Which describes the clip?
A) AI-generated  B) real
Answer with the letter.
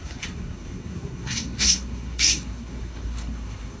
A